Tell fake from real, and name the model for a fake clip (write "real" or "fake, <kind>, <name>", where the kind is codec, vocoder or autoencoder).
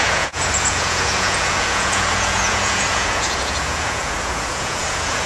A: fake, vocoder, Vocos